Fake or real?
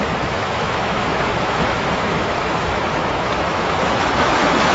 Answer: fake